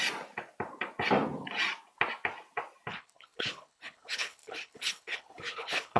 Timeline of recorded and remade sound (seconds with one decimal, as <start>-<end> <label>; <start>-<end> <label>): 0.0-2.9 recorded; 2.9-6.0 remade